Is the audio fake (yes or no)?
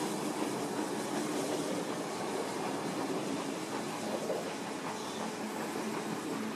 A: yes